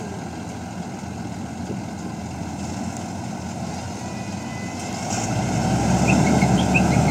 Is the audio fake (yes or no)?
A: no